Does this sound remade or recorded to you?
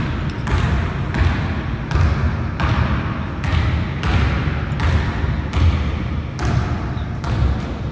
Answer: recorded